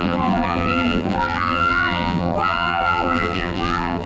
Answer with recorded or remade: remade